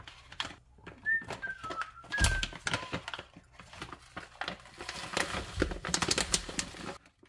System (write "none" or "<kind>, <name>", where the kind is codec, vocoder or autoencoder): none